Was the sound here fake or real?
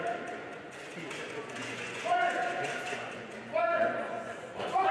fake